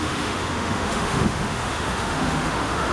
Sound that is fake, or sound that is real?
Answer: fake